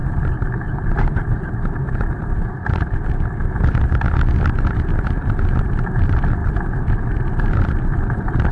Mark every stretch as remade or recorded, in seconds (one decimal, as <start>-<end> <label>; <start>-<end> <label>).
0.0-8.5 recorded